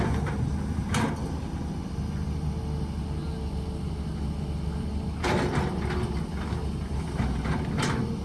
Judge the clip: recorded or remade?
recorded